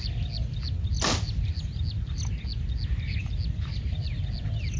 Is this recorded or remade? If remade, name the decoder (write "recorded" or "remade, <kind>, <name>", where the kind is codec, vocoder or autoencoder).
recorded